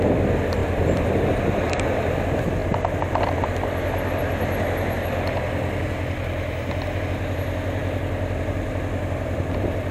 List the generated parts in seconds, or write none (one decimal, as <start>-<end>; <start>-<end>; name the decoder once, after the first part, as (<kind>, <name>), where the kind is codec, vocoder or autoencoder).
0.6-1.2 (vocoder, BigVGAN v2)